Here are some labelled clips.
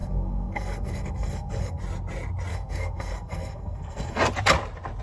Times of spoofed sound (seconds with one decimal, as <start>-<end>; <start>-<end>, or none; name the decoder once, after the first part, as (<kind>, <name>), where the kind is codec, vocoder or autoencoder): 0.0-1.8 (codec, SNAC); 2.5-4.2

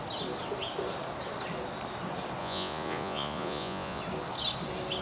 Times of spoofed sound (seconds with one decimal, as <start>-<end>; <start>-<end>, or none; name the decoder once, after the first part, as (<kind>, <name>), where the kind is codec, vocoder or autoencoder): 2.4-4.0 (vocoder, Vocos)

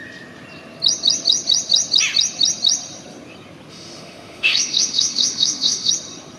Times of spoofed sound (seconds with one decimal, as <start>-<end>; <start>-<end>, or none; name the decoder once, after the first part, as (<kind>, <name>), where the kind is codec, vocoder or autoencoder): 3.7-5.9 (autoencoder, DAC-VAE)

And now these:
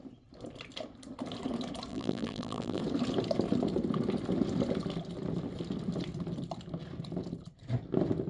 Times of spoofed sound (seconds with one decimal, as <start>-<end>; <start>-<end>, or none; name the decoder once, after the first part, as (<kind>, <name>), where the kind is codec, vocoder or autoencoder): 1.9-2.8 (vocoder, BigVGAN v2)